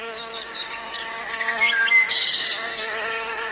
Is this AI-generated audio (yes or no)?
yes